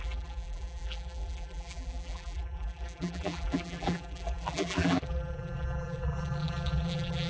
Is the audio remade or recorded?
remade